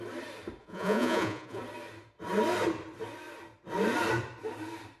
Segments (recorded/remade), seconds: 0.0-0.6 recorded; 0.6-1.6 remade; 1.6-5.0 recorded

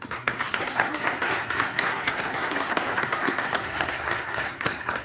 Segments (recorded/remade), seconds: 0.0-5.0 remade

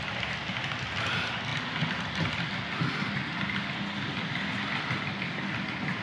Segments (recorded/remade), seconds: 0.0-6.0 recorded